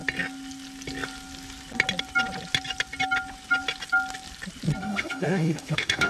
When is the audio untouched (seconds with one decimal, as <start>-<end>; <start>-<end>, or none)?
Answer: 0.0-4.8